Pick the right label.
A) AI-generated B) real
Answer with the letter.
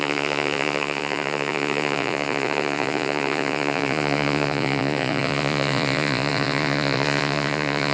A